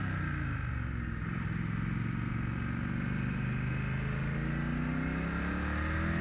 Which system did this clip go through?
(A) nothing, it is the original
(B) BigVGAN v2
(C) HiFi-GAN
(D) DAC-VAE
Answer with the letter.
A